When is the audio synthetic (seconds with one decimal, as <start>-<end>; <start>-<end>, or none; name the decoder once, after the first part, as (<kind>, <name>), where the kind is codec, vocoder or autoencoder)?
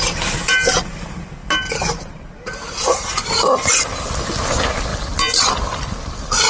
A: none